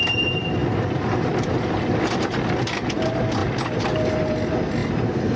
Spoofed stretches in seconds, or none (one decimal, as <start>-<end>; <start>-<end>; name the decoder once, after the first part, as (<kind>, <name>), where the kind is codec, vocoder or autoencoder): 4.8-5.4 (vocoder, BigVGAN v2)